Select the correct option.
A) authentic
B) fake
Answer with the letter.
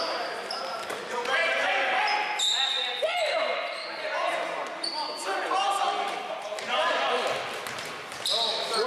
A